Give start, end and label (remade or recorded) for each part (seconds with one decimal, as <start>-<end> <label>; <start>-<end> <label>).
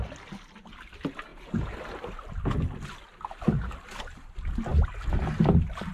0.0-5.9 recorded